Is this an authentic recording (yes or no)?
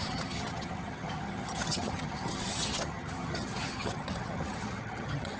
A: no